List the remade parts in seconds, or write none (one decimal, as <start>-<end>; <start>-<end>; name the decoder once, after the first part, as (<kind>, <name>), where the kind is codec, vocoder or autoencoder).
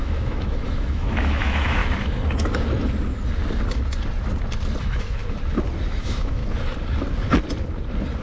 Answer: 0.0-1.8 (autoencoder, DAC-VAE); 4.8-5.2; 5.9-6.4